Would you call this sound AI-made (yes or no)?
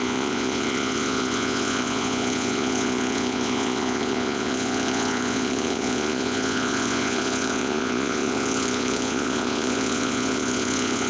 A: yes